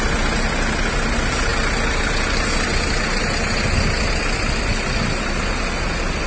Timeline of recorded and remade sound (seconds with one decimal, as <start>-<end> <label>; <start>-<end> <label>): 0.0-6.3 recorded

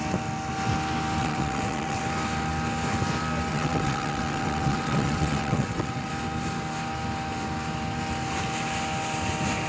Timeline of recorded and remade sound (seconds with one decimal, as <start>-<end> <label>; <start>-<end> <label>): 0.0-1.2 recorded; 1.2-2.0 remade; 2.0-3.5 recorded; 3.5-6.1 remade; 6.1-9.7 recorded